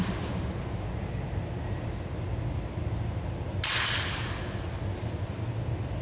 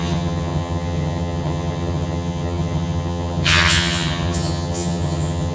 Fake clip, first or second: second